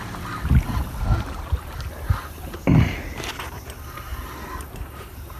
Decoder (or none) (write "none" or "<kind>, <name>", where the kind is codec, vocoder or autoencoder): none